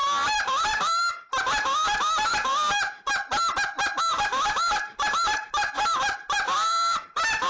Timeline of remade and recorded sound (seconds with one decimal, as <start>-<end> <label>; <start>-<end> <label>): 0.0-1.1 remade; 1.1-2.3 recorded; 2.3-3.1 remade; 3.1-4.1 recorded; 4.1-7.0 remade; 7.0-7.5 recorded